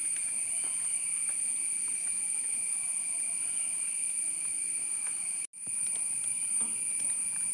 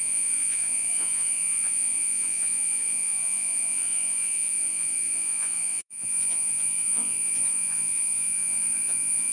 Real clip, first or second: first